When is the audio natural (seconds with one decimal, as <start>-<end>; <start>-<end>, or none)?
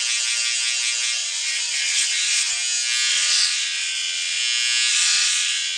0.0-1.2; 2.5-3.1; 4.4-4.9